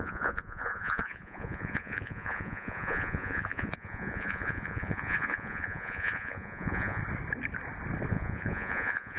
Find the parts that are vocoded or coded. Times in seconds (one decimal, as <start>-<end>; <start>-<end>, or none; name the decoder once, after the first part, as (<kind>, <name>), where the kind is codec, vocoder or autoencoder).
0.0-7.0 (vocoder, Vocos); 8.1-9.2